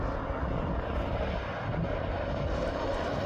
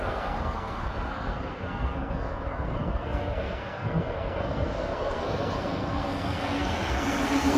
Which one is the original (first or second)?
first